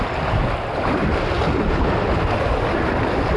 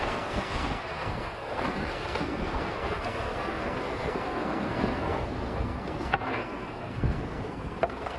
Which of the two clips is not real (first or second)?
second